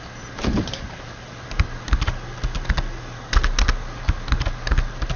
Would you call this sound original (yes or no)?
yes